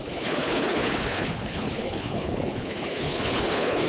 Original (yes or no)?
no